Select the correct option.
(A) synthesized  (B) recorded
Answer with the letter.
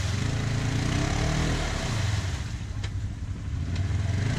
B